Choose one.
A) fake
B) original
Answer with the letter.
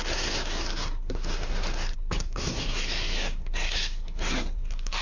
A